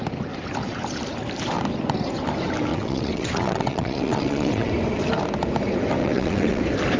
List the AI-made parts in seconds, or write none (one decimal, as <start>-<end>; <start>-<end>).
2.7-4.7; 6.0-6.6